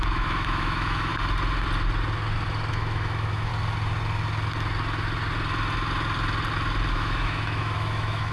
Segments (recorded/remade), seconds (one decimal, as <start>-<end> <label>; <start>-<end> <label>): 0.0-1.1 remade; 1.1-2.7 recorded; 2.7-3.5 remade; 3.5-6.9 recorded; 6.9-8.3 remade